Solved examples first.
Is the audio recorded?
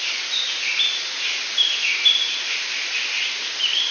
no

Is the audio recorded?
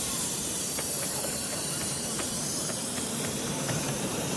no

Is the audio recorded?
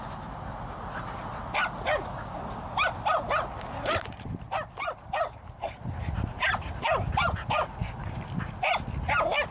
yes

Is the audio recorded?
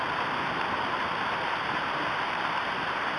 no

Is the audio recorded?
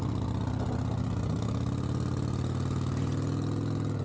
yes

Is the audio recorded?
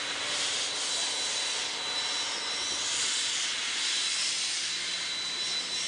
yes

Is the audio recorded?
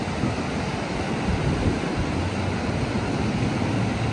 yes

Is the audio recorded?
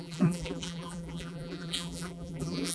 no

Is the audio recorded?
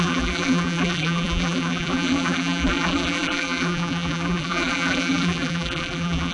no